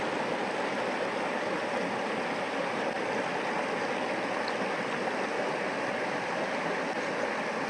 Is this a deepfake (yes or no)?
no